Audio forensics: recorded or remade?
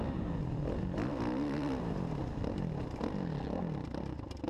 recorded